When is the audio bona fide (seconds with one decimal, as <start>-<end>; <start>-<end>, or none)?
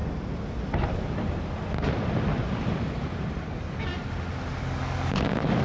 0.0-3.4; 3.9-4.6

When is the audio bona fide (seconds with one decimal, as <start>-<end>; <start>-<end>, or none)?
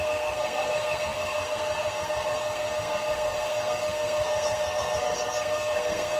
none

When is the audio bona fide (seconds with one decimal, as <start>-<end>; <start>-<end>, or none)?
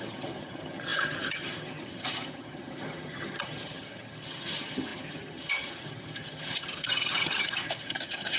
none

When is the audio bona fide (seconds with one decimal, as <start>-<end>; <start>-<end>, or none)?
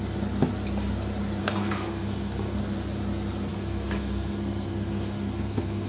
0.0-1.4; 2.6-3.5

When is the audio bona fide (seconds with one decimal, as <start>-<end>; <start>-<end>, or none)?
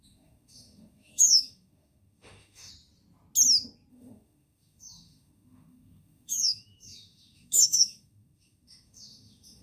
2.7-3.9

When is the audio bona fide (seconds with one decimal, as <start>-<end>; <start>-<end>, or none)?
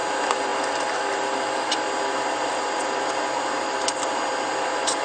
0.0-5.0